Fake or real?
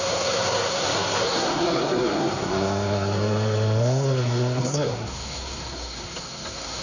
fake